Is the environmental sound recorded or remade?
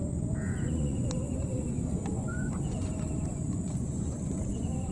remade